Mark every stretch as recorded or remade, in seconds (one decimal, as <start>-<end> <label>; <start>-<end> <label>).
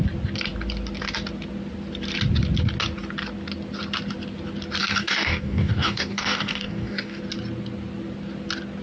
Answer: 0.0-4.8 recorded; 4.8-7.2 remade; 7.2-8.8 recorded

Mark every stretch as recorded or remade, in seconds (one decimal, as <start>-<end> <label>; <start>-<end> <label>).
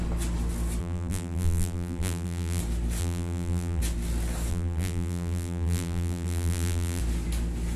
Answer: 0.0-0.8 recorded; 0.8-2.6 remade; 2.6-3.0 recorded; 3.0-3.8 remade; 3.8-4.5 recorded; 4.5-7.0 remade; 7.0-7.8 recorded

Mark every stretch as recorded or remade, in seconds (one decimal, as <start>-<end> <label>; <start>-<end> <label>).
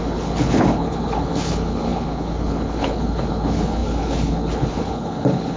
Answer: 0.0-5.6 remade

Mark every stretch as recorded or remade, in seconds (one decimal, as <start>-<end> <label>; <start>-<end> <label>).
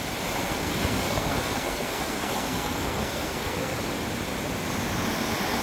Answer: 0.0-0.4 recorded; 0.4-3.8 remade; 3.8-5.6 recorded